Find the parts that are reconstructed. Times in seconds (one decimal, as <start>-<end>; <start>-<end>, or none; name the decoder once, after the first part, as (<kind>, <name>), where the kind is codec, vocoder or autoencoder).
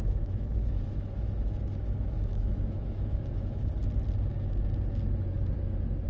0.0-3.7 (autoencoder, DAC-VAE)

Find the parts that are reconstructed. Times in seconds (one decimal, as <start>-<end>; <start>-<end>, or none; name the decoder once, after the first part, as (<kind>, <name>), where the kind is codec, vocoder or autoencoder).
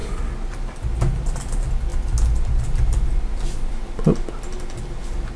none